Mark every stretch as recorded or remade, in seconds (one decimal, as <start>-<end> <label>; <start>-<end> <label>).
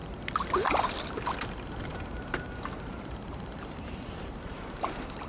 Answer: 0.0-0.8 remade; 0.8-1.9 recorded; 1.9-5.3 remade